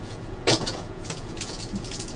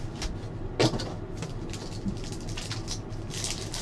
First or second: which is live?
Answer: second